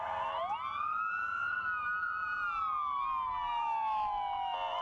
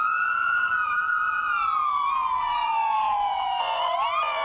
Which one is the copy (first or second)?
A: second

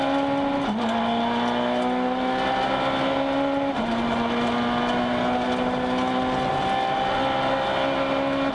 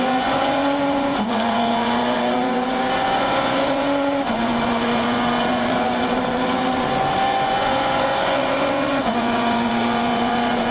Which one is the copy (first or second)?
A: second